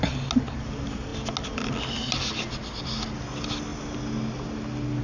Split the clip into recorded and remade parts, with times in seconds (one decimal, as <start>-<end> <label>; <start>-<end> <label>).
0.0-5.0 recorded